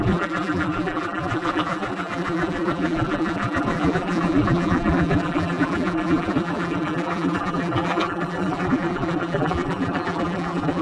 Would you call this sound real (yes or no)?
no